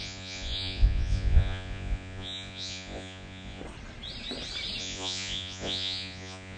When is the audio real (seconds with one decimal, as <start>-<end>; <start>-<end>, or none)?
3.6-4.8